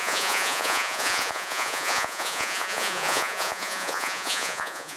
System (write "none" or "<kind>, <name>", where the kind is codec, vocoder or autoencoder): vocoder, Vocos